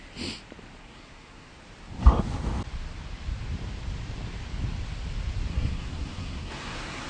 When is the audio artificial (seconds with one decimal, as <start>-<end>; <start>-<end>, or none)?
0.8-1.5; 5.5-7.1